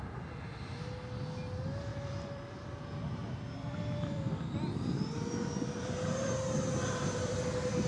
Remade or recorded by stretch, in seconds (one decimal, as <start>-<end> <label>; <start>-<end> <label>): 0.0-1.9 recorded; 1.9-2.8 remade; 2.8-3.2 recorded; 3.2-7.9 remade